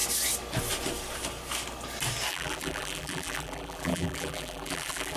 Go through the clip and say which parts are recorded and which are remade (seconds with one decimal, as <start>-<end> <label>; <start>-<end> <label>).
0.0-2.3 recorded; 2.3-5.2 remade